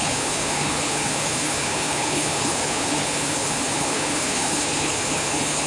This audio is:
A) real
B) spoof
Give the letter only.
B